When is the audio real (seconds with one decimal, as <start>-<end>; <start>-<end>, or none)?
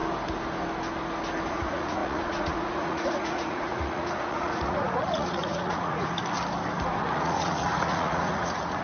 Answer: 0.0-1.5; 6.2-7.0